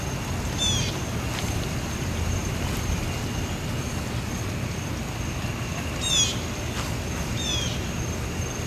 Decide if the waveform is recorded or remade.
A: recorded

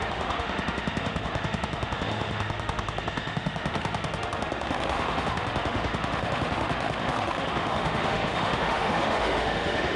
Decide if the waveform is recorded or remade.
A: remade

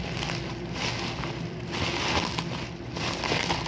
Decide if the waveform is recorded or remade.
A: recorded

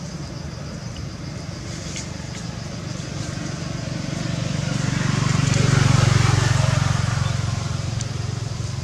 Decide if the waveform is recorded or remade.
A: recorded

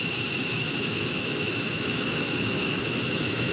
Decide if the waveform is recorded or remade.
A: remade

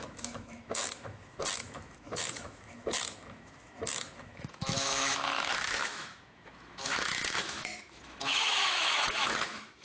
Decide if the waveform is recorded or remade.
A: remade